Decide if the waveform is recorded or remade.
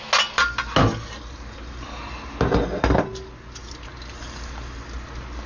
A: recorded